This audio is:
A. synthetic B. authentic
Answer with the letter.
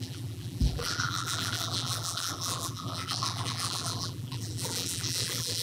A